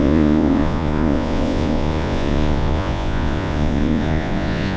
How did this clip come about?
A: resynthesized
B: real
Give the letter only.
A